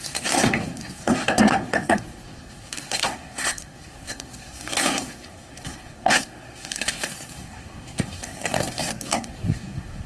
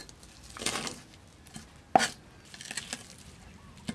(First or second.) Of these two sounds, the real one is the second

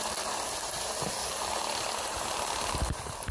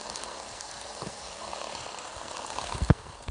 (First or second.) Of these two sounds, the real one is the first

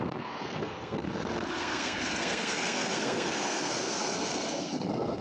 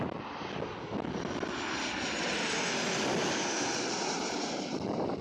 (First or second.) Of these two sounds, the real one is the second